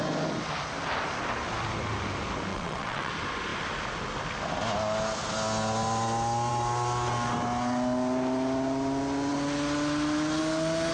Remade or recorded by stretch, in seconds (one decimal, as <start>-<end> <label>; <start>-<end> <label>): 0.0-2.5 recorded; 2.5-3.1 remade; 3.1-10.9 recorded